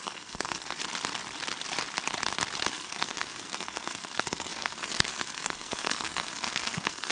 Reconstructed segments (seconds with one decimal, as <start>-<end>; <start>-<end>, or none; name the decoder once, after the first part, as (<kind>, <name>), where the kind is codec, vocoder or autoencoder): 0.0-0.8 (codec, SNAC); 2.7-7.1